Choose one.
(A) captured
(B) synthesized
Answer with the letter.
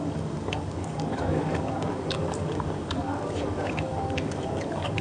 B